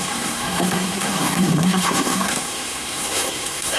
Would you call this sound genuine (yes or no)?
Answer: no